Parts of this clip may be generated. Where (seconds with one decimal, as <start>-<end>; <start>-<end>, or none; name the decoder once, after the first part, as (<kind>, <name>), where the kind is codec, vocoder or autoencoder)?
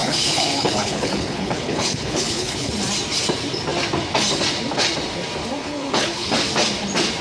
0.0-2.7 (codec, HILCodec); 5.6-6.3